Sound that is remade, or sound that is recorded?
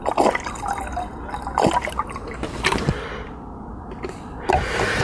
recorded